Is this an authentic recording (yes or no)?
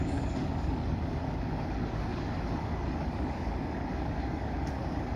no